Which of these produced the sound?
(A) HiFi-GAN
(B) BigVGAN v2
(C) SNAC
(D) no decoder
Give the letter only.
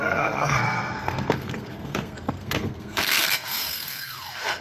C